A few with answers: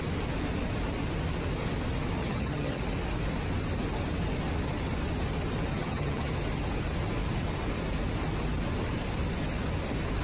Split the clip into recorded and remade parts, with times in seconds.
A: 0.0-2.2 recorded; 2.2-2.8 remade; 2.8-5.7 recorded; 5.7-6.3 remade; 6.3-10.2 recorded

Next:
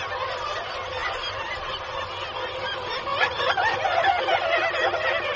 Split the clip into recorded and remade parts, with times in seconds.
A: 0.0-1.0 recorded; 1.0-1.8 remade; 1.8-3.1 recorded; 3.1-4.1 remade; 4.1-5.4 recorded